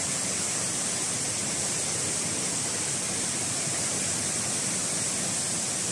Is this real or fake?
real